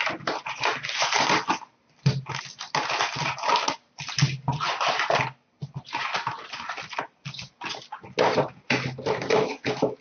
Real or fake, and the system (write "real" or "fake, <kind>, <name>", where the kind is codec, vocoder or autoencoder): real